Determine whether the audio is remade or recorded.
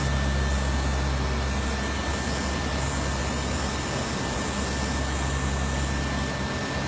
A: recorded